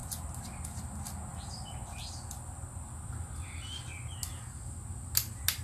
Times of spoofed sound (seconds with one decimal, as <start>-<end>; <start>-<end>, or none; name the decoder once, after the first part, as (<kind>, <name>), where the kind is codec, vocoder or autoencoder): none